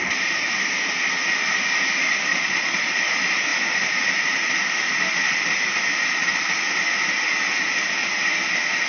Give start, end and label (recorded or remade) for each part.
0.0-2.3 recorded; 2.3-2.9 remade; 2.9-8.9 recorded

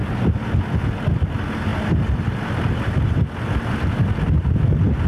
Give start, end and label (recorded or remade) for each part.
0.0-5.1 recorded

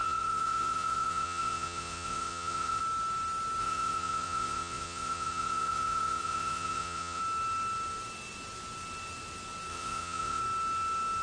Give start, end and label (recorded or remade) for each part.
0.0-2.8 remade; 2.8-3.6 recorded; 3.6-7.2 remade; 7.2-9.7 recorded; 9.7-10.4 remade; 10.4-11.2 recorded

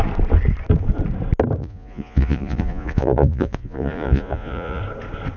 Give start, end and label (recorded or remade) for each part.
0.0-1.6 recorded; 1.6-4.8 remade; 4.8-5.4 recorded

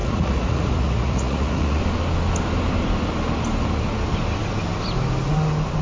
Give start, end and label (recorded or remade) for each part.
0.0-1.8 remade; 1.8-5.8 recorded